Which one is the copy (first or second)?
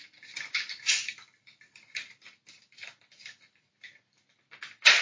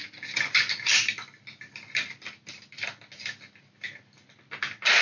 first